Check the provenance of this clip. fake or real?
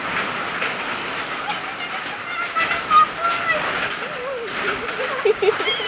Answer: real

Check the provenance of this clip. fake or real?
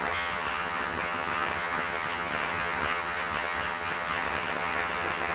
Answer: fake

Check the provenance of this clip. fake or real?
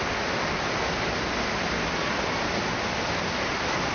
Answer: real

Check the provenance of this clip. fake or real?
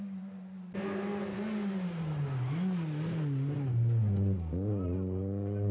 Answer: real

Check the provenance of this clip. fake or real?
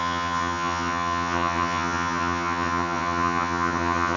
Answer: fake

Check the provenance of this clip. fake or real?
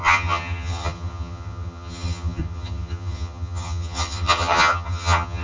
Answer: fake